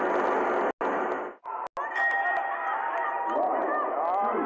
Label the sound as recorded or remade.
recorded